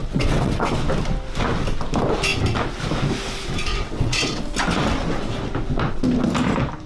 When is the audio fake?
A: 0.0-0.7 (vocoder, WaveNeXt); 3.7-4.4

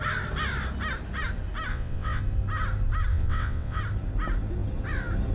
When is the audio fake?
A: 1.7-2.2 (vocoder, WaveNeXt); 3.1-3.8

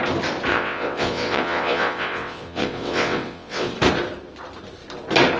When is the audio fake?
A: 0.5-3.7 (vocoder, WaveNeXt)